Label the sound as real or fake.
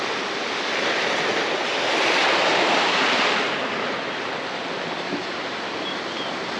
real